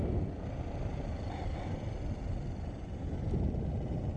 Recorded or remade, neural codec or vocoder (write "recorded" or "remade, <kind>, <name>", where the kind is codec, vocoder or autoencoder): recorded